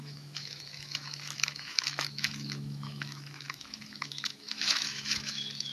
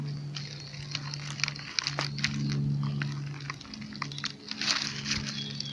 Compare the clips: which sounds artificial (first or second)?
first